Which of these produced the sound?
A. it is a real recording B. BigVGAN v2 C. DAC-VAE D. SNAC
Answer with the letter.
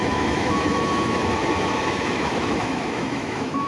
C